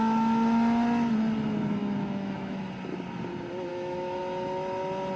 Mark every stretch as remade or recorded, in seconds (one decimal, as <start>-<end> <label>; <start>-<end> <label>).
0.0-1.8 recorded; 1.8-2.6 remade; 2.6-3.7 recorded; 3.7-4.2 remade; 4.2-5.2 recorded